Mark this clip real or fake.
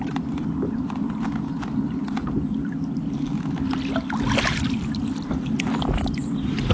real